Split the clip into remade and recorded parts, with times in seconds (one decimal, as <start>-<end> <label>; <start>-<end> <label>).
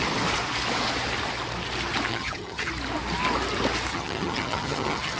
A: 0.0-2.1 recorded; 2.1-2.7 remade; 2.7-3.9 recorded; 3.9-5.2 remade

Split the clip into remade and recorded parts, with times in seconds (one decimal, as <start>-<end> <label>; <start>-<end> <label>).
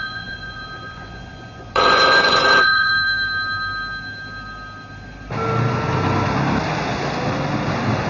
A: 0.0-2.9 remade; 2.9-8.1 recorded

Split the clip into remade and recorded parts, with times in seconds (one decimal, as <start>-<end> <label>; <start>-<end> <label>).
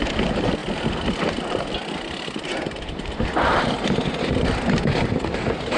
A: 0.0-5.8 recorded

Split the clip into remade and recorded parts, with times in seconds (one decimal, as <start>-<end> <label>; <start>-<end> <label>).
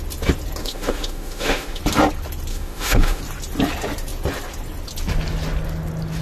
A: 0.0-0.6 recorded; 0.6-1.8 remade; 1.8-2.5 recorded; 2.5-3.2 remade; 3.2-6.2 recorded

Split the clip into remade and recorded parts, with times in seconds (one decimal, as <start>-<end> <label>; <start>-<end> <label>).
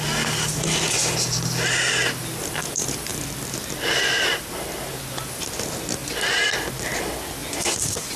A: 0.0-7.4 recorded; 7.4-8.2 remade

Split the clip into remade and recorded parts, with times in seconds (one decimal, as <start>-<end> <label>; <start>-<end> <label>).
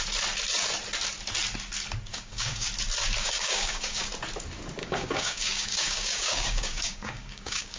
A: 0.0-2.1 recorded; 2.1-2.7 remade; 2.7-3.2 recorded; 3.2-4.1 remade; 4.1-4.8 recorded; 4.8-7.8 remade